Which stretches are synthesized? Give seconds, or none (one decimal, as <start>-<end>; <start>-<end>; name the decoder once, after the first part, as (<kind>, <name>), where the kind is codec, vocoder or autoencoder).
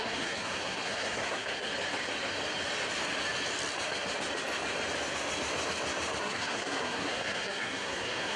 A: 0.0-1.7 (codec, SNAC); 6.2-8.4